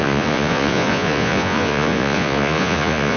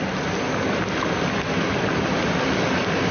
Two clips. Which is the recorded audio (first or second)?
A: second